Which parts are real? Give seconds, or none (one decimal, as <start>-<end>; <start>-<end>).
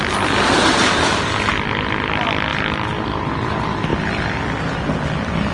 0.0-5.5